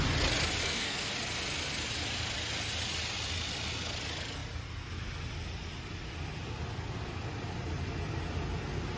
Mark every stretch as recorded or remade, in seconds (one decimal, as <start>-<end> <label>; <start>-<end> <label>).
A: 0.0-0.6 recorded; 0.6-1.1 remade; 1.1-9.0 recorded